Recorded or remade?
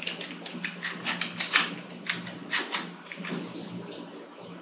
recorded